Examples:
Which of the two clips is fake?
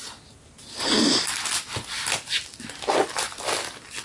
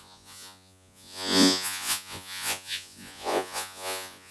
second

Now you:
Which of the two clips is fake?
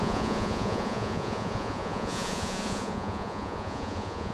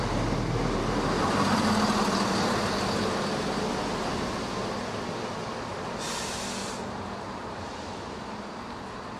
first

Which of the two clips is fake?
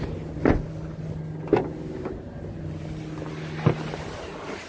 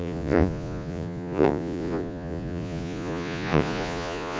second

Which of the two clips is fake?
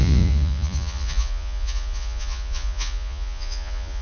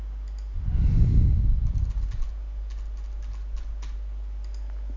first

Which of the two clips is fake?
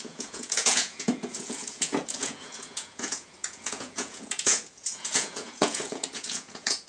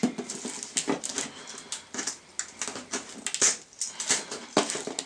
first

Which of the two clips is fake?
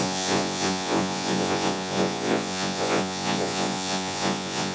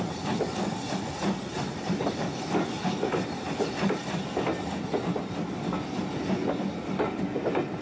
first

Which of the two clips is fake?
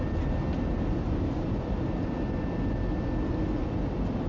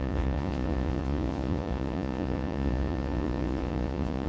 second